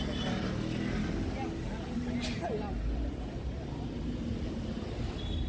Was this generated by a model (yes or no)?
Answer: no